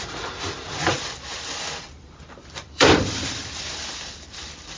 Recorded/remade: remade